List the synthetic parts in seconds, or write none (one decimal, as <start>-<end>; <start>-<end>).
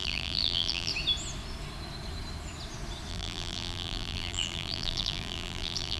0.0-0.9; 3.1-6.0